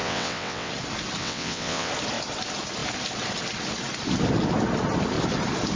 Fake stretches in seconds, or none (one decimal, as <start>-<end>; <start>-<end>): 0.0-0.7; 1.2-1.9